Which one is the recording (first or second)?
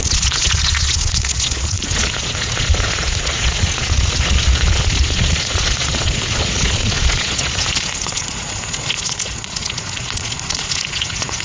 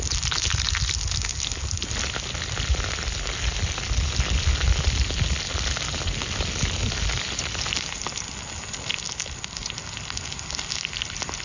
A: second